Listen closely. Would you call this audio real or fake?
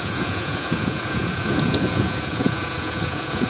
fake